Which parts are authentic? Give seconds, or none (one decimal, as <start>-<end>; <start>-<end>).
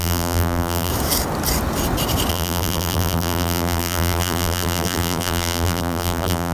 0.9-2.3